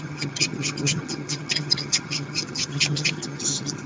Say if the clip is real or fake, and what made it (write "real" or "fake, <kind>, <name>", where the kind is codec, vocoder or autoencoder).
fake, vocoder, HiFi-GAN